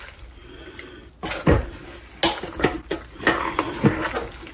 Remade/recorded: recorded